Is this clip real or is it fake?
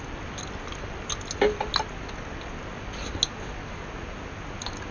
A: real